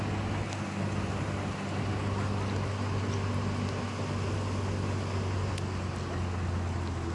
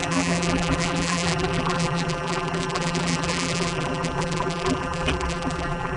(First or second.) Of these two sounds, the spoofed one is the second